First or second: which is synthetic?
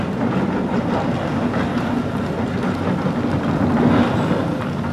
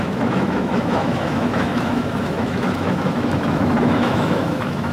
second